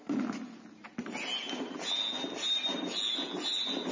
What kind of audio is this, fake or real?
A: real